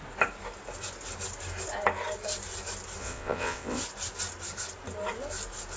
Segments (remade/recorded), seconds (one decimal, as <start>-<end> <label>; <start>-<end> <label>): 0.0-3.0 recorded; 3.0-3.8 remade; 3.8-5.8 recorded